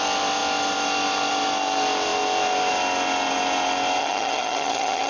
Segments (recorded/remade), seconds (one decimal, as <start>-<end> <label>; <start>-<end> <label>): 0.0-4.0 recorded; 4.0-5.1 remade